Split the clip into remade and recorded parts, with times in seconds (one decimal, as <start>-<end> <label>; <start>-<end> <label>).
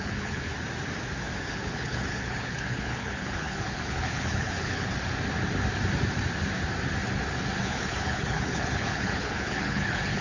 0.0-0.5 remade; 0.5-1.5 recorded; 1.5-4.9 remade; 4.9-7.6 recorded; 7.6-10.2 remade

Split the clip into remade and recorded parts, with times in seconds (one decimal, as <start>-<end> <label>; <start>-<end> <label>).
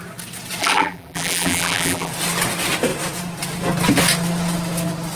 0.0-0.6 recorded; 0.6-2.1 remade; 2.1-5.2 recorded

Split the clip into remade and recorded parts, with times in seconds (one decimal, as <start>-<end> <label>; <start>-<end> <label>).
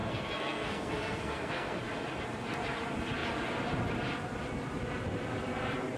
0.0-1.8 remade; 1.8-6.0 recorded